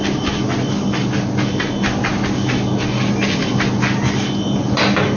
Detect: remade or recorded recorded